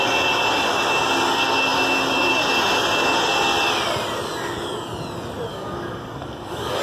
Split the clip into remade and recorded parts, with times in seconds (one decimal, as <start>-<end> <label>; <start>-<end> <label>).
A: 0.0-5.5 recorded; 5.5-6.8 remade